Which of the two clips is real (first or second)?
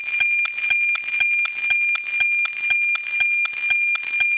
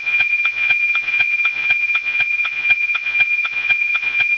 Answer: first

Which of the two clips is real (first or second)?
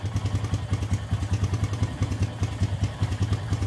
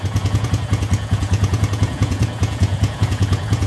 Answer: first